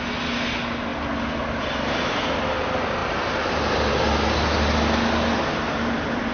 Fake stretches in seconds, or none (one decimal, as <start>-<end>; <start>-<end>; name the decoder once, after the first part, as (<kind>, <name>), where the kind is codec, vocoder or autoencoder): none